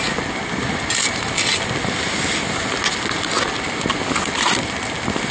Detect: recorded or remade recorded